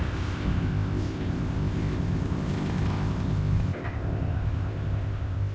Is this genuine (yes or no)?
no